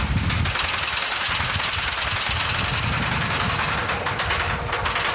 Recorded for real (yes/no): yes